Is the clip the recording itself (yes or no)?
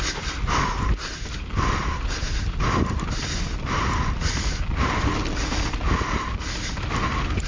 yes